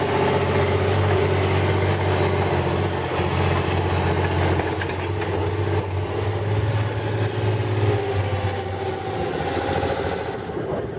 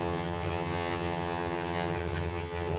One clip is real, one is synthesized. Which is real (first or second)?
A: first